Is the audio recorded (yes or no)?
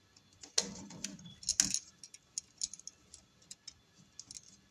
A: yes